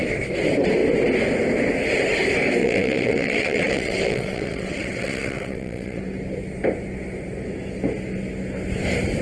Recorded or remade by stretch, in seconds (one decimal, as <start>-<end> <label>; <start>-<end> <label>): 0.0-2.6 recorded; 2.6-6.0 remade; 6.0-9.2 recorded